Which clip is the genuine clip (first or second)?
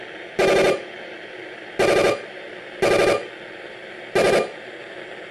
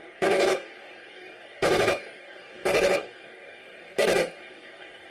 first